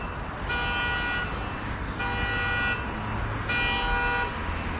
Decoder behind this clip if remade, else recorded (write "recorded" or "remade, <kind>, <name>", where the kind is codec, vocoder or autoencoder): recorded